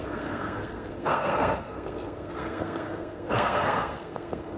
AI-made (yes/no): yes